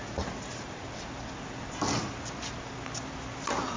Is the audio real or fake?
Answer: real